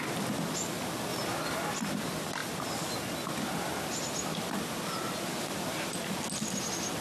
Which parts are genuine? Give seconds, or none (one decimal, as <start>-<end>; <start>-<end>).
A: 0.0-7.0